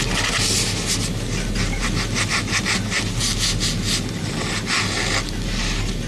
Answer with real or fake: real